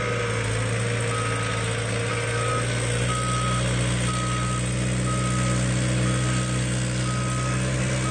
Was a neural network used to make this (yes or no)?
no